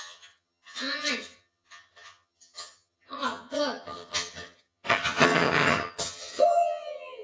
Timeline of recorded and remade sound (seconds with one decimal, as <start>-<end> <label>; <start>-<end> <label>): 0.0-7.2 remade